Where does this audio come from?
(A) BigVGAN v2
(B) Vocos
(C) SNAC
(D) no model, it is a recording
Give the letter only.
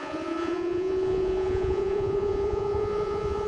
B